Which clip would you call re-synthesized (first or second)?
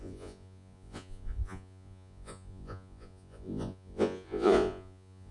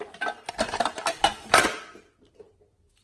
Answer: first